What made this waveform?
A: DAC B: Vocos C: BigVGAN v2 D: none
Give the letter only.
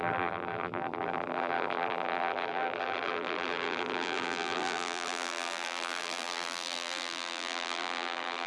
C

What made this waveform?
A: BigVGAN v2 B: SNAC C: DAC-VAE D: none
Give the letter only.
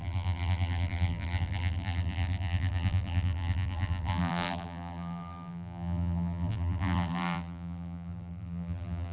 A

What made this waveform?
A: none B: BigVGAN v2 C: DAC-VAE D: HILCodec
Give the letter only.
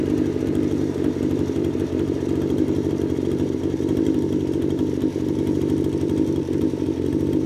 B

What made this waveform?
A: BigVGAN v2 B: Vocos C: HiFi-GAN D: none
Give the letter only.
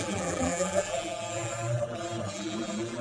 A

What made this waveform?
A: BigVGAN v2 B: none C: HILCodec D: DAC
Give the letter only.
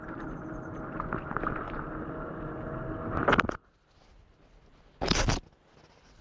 B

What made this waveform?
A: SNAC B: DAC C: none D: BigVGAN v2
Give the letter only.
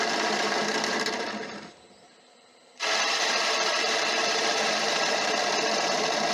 D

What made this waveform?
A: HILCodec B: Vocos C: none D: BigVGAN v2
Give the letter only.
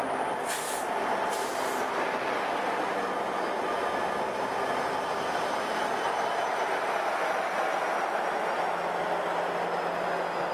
C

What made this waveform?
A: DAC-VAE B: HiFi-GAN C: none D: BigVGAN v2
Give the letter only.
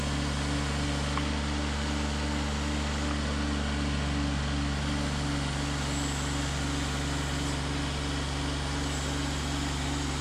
C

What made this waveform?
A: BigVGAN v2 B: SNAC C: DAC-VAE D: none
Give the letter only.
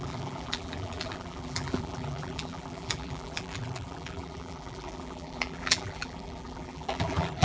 A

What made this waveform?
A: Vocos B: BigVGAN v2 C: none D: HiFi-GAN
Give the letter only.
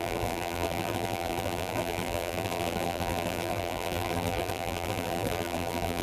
B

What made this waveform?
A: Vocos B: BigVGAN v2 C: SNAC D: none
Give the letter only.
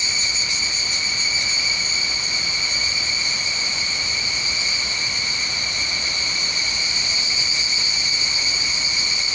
D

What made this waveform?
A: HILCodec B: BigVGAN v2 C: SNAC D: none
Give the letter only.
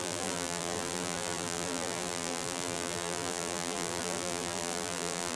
B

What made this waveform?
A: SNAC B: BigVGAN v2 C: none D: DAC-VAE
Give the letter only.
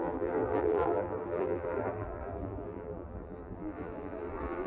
B